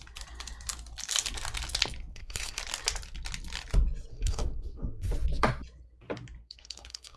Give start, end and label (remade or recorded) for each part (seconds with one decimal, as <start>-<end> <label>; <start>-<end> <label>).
0.0-2.1 recorded; 2.1-2.6 remade; 2.6-4.1 recorded; 4.1-5.1 remade; 5.1-6.4 recorded; 6.4-7.2 remade